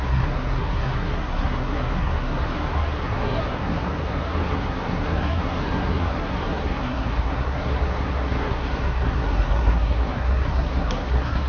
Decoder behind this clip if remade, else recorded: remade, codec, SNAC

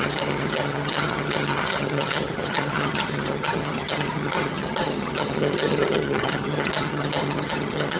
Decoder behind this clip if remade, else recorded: remade, vocoder, HiFi-GAN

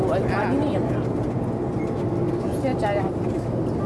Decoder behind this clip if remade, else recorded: recorded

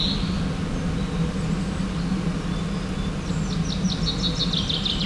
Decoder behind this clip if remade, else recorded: recorded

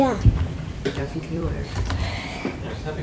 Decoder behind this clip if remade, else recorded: remade, vocoder, BigVGAN v2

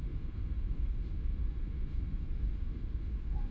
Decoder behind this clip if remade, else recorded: remade, autoencoder, DAC-VAE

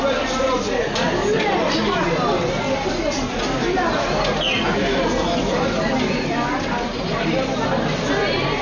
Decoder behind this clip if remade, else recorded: recorded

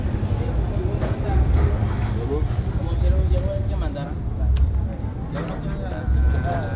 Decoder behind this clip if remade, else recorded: recorded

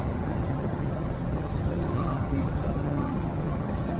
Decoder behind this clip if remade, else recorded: remade, vocoder, HiFi-GAN